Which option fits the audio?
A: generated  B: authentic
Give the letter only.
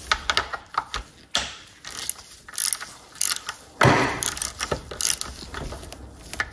B